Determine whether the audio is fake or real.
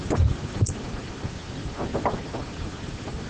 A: real